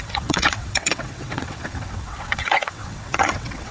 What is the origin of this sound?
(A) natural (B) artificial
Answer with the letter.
B